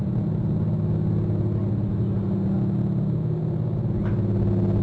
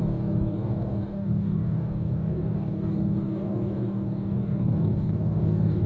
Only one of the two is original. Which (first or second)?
first